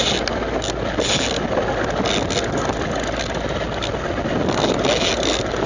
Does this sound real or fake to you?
real